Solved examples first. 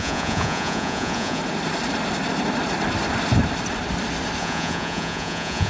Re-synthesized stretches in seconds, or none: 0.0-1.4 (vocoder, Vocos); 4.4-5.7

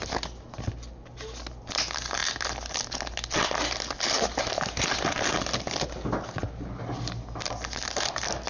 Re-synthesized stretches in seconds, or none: none

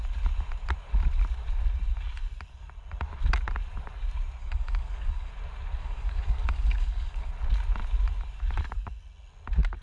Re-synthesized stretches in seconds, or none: 4.4-5.3 (codec, DAC); 5.8-7.3

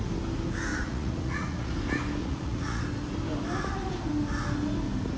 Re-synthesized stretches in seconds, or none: 0.7-1.7 (vocoder, Vocos); 2.2-2.8

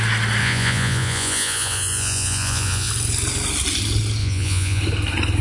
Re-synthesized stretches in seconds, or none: 0.4-2.9 (vocoder, Vocos); 4.2-4.8